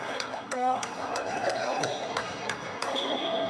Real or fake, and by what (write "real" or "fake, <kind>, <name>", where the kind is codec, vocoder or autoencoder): fake, codec, SNAC